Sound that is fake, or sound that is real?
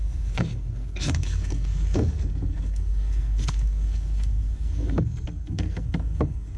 fake